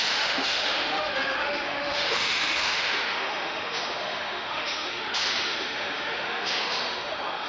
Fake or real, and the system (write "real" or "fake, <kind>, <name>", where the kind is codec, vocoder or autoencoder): fake, autoencoder, DAC-VAE